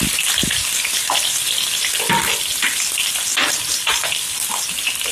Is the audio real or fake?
real